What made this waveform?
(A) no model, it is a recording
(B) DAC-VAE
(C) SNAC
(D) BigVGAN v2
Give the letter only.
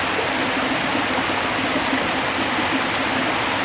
A